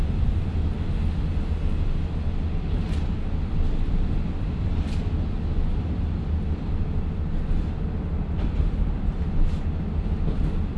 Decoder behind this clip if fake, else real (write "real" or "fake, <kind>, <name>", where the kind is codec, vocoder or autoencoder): real